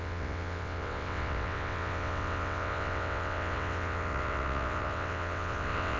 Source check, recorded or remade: remade